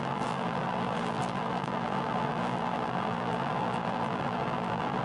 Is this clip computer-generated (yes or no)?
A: yes